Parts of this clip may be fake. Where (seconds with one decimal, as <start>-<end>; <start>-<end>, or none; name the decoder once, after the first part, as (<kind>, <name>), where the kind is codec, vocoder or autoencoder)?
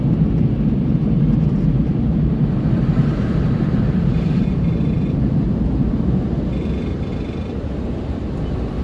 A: 2.1-5.9 (vocoder, BigVGAN v2)